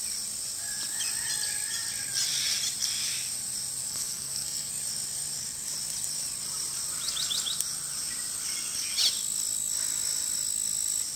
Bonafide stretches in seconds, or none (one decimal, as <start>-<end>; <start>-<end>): 0.0-3.8; 4.7-11.2